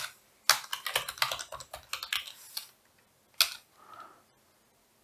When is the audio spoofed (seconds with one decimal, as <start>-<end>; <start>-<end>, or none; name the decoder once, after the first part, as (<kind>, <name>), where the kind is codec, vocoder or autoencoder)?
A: none